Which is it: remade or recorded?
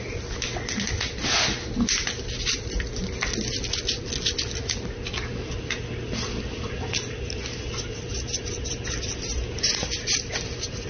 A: recorded